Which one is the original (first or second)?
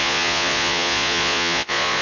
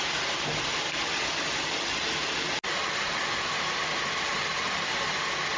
second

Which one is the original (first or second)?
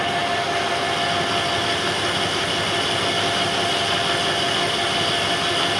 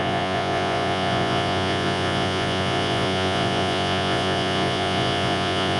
first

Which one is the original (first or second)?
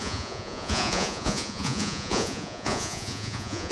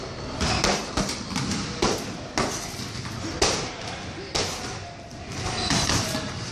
second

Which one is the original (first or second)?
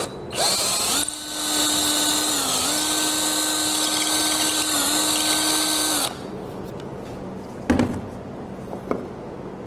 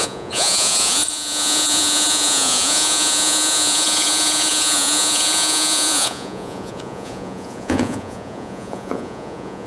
first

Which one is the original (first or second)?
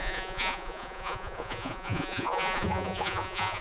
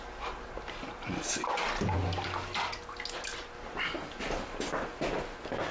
second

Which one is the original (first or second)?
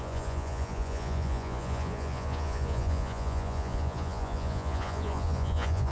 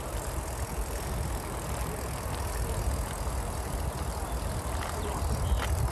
second